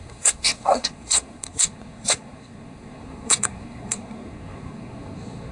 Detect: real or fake fake